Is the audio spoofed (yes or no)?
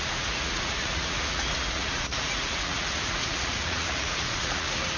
yes